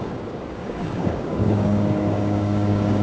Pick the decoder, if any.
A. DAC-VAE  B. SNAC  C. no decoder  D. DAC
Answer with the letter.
D